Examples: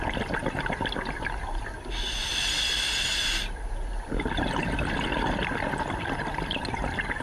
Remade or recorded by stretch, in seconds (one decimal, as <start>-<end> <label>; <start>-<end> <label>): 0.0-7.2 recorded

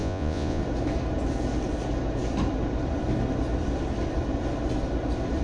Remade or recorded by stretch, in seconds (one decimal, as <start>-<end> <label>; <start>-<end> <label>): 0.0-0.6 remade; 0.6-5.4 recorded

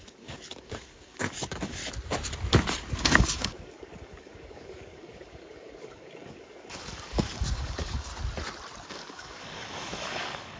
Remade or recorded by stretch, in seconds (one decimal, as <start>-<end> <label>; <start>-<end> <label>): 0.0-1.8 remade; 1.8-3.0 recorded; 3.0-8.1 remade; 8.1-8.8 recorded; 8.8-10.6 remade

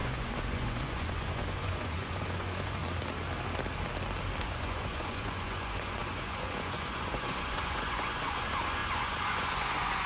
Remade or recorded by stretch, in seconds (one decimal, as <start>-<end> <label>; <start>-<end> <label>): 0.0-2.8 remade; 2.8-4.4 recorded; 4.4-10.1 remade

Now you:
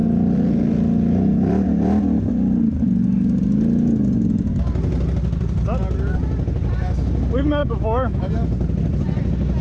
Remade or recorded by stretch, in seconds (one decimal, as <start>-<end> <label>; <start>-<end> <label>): 0.0-7.6 recorded; 7.6-8.3 remade; 8.3-9.6 recorded

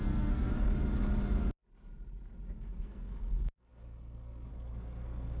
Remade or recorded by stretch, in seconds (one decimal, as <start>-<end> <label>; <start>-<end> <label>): 0.0-0.5 remade; 0.5-2.5 recorded; 2.5-5.4 remade